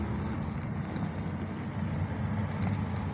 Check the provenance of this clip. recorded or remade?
recorded